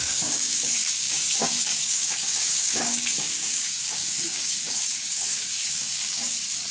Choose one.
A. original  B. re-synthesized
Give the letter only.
B